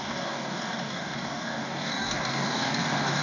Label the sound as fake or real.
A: fake